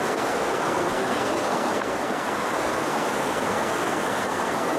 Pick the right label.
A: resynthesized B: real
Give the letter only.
A